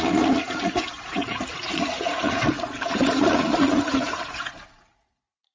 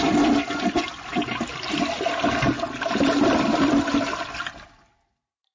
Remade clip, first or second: first